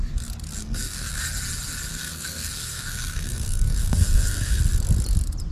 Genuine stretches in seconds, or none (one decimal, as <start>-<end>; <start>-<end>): 0.0-0.6; 1.2-1.9; 4.6-5.5